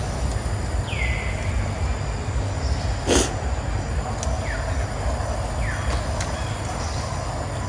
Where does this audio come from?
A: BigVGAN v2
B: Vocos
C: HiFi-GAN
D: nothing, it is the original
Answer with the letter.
D